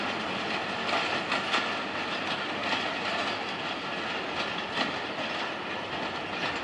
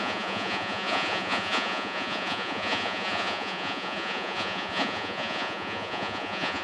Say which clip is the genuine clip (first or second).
first